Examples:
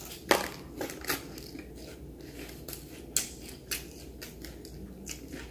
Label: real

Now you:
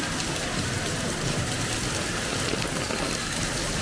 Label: real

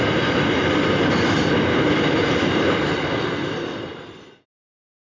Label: real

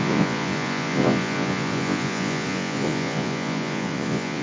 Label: fake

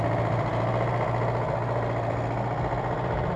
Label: real